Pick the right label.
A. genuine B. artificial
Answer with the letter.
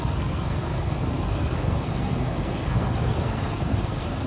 B